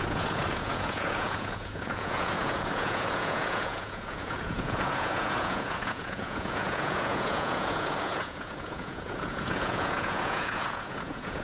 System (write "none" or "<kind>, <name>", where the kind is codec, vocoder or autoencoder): vocoder, Vocos